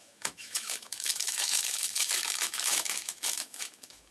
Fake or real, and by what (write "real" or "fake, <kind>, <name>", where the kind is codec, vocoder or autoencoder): fake, autoencoder, DAC-VAE